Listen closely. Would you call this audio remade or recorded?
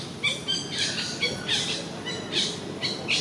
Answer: recorded